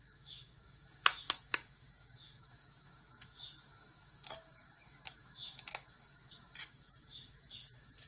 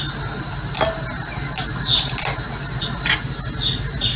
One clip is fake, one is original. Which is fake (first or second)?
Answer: first